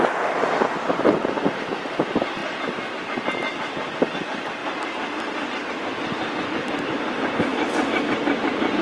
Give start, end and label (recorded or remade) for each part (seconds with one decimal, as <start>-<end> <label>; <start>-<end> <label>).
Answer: 0.0-8.8 recorded